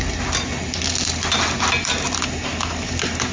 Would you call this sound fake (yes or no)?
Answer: no